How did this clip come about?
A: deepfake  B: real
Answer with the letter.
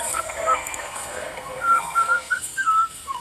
A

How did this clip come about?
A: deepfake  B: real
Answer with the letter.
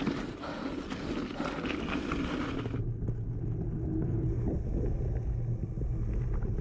B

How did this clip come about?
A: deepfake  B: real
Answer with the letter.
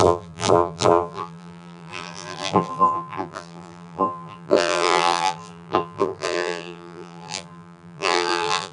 A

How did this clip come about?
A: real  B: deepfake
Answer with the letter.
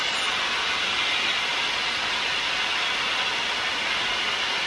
A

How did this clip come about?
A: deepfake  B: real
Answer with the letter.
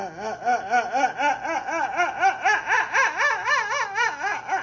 B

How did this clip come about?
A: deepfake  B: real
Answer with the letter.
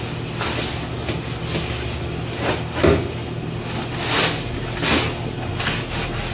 B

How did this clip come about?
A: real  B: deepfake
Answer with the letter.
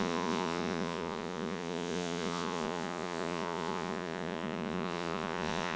B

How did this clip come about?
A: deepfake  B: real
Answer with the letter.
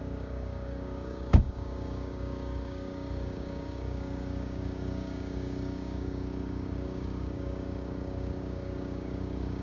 A